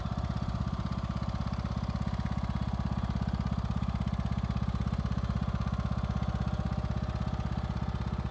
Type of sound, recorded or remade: recorded